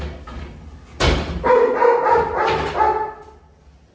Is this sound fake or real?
real